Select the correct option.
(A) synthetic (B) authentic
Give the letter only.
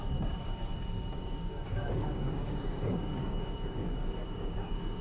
A